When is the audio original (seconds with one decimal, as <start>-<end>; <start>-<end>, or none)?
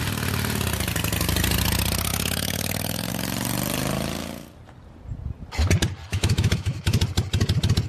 0.0-2.1; 3.1-6.1; 7.0-7.9